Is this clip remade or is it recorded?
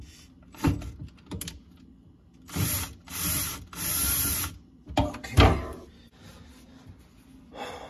recorded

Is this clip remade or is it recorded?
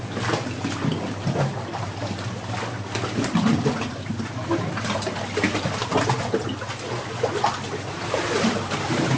recorded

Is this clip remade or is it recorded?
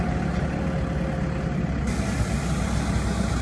recorded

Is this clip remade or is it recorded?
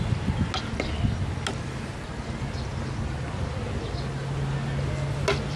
recorded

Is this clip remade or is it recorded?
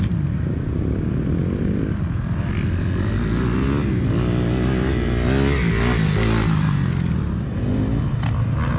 recorded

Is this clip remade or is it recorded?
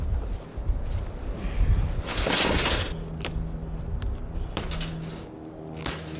recorded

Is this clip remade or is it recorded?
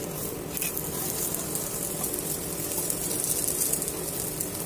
recorded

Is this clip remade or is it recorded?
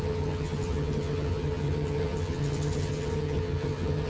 remade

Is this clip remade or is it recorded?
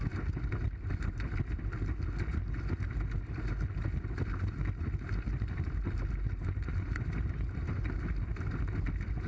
recorded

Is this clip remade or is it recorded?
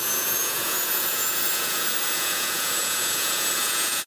remade